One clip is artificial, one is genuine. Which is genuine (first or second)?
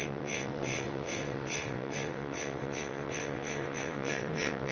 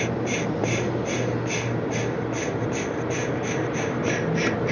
second